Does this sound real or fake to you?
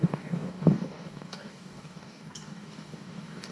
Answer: fake